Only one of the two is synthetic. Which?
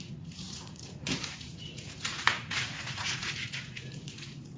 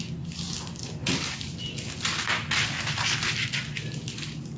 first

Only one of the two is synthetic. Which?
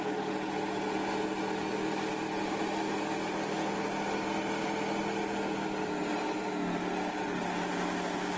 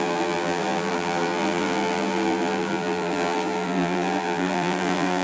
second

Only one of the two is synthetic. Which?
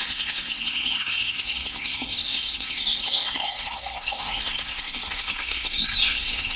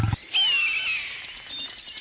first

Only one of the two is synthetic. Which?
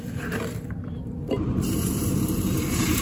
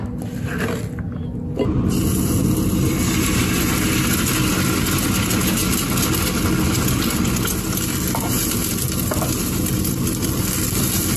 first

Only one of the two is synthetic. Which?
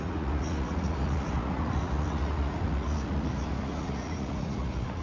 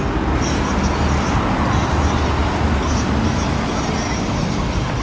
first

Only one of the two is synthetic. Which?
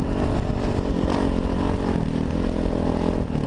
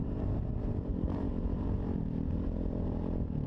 second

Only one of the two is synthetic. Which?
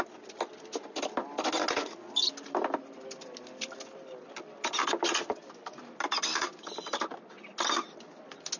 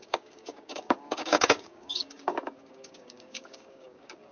second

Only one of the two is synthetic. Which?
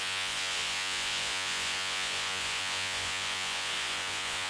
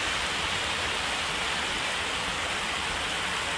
first